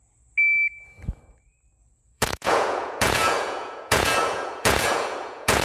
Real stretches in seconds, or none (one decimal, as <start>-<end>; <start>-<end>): 0.0-1.8